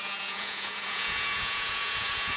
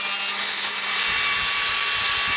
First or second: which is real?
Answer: second